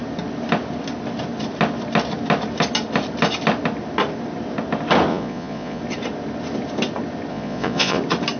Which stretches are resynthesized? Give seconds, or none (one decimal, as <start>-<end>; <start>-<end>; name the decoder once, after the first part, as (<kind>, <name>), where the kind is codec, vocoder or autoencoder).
5.1-5.8 (vocoder, Vocos); 7.3-8.0